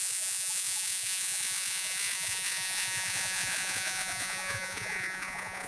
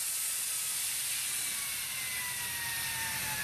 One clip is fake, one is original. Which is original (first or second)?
second